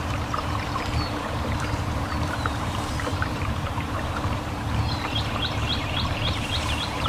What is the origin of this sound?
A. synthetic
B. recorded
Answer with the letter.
A